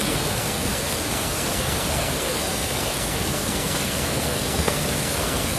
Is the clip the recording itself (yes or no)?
no